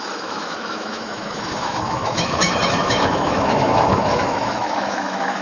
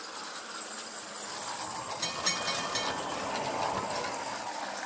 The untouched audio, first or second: second